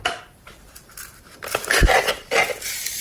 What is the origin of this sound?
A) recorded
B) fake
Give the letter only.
A